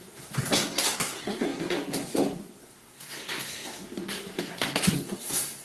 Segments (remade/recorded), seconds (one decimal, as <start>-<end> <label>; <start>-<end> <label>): 0.0-5.6 remade